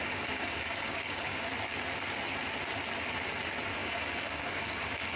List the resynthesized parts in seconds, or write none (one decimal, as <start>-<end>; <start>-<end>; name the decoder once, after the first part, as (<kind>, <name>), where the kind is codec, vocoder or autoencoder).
0.0-1.5 (codec, DAC); 3.8-5.2